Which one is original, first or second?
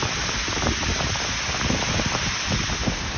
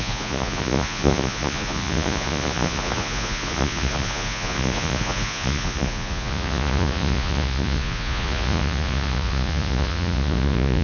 first